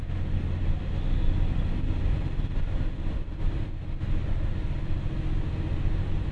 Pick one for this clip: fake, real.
real